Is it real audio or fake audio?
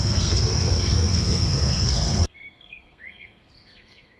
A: fake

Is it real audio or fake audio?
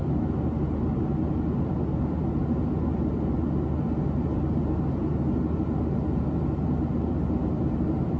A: real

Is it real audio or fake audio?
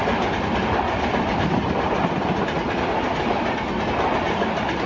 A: real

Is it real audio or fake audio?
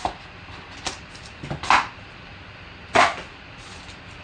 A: real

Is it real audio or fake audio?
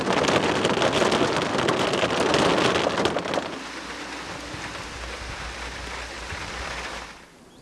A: real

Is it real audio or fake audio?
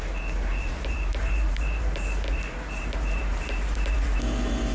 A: fake